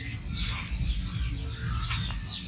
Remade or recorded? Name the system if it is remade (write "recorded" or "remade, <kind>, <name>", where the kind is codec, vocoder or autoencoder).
recorded